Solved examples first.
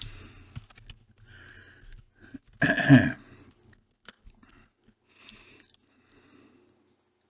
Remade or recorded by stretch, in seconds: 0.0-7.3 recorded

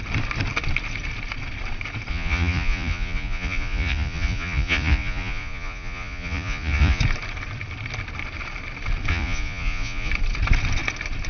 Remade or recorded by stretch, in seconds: 0.0-2.1 recorded; 2.1-7.0 remade; 7.0-9.1 recorded; 9.1-10.1 remade; 10.1-11.3 recorded

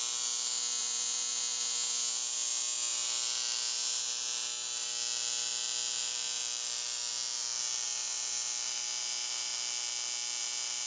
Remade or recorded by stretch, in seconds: 0.0-6.4 recorded; 6.4-7.1 remade; 7.1-10.9 recorded

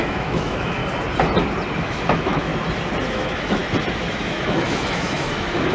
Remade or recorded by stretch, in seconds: 0.0-0.8 remade; 0.8-1.8 recorded; 1.8-2.5 remade; 2.5-3.1 recorded; 3.1-3.6 remade; 3.6-4.1 recorded; 4.1-5.7 remade

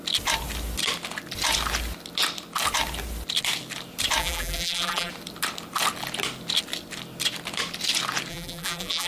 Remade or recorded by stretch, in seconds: 0.0-4.2 recorded; 4.2-5.1 remade; 5.1-8.3 recorded; 8.3-9.1 remade